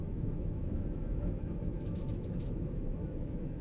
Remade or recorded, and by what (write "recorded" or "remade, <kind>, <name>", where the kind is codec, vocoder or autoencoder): remade, autoencoder, DAC-VAE